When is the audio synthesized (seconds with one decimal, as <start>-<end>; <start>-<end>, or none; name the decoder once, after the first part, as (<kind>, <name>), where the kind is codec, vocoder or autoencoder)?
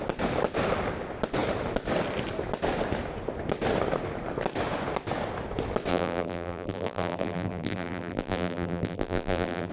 5.9-9.7 (vocoder, BigVGAN v2)